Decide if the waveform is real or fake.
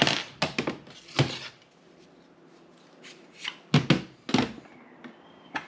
real